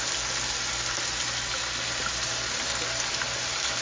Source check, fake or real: real